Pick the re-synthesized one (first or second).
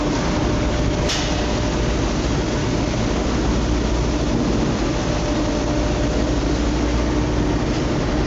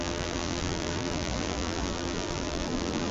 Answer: second